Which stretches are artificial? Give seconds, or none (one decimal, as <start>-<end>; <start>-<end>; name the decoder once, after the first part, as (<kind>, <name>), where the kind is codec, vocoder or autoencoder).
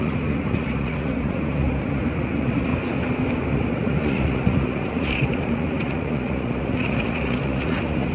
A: 0.0-2.7 (vocoder, Vocos); 3.5-8.1